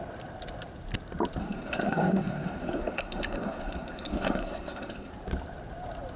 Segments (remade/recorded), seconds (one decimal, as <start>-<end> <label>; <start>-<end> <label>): 0.0-1.4 recorded; 1.4-5.1 remade; 5.1-6.2 recorded